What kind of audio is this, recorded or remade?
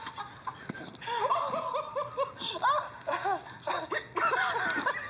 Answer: recorded